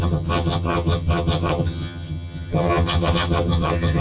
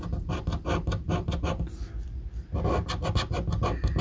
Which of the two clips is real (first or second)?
second